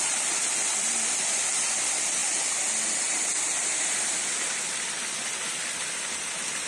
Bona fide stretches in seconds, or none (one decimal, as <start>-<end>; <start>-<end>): 0.0-6.7

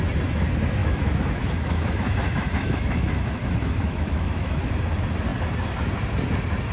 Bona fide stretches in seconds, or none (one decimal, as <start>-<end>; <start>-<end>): 0.0-0.8; 4.8-6.7

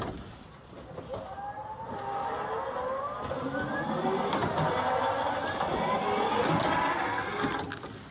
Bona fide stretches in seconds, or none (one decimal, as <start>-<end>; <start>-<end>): 0.0-8.1

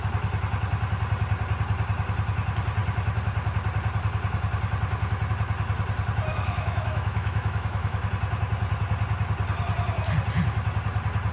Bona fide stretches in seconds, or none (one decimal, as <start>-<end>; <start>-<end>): 0.0-6.3; 8.1-11.3